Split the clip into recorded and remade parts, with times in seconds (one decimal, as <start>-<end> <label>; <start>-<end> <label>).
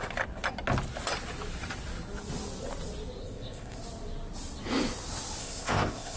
0.0-3.2 recorded; 3.2-3.8 remade; 3.8-5.4 recorded; 5.4-6.2 remade